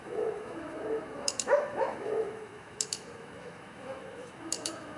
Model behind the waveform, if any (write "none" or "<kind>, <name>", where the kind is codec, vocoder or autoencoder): autoencoder, DAC-VAE